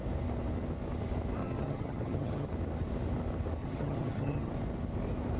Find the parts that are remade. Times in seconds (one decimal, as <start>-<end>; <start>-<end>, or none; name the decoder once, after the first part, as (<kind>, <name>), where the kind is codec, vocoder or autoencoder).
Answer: 1.4-2.5 (vocoder, HiFi-GAN); 3.6-4.5